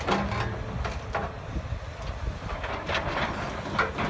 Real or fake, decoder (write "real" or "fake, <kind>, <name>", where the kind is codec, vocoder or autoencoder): real